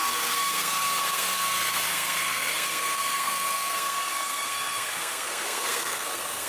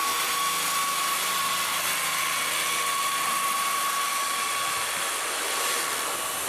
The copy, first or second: first